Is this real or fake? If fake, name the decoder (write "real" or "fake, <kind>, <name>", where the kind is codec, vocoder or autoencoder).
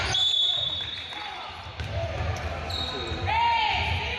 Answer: real